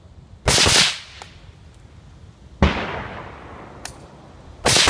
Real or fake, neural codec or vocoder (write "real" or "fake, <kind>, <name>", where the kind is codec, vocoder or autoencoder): real